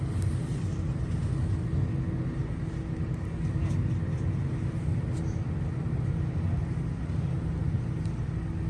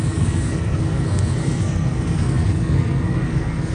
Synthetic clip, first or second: second